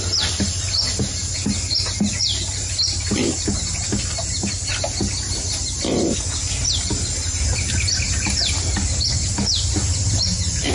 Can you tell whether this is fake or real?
real